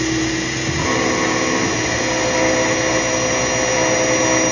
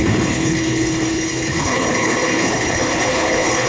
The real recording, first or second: first